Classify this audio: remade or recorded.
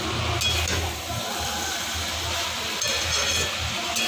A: recorded